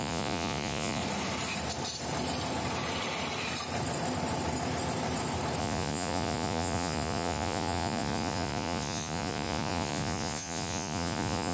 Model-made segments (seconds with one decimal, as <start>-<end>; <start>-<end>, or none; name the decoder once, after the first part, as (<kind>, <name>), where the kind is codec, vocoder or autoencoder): 0.0-1.0 (vocoder, Vocos); 5.6-11.5